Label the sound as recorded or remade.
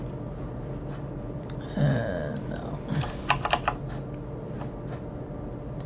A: recorded